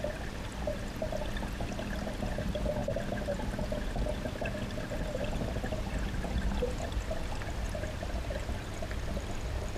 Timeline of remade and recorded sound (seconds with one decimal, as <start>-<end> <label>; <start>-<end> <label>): 0.0-9.8 recorded